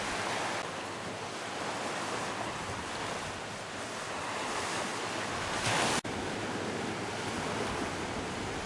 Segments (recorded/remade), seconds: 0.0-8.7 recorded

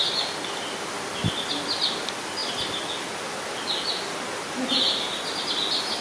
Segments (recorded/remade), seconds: 0.0-6.0 recorded

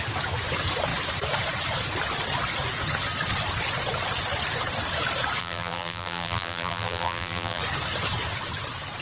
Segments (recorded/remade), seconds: 0.0-5.4 recorded; 5.4-7.6 remade; 7.6-9.0 recorded

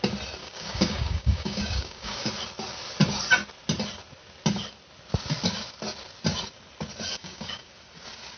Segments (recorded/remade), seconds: 0.0-0.4 recorded; 0.4-2.3 remade; 2.3-7.1 recorded; 7.1-7.7 remade; 7.7-8.4 recorded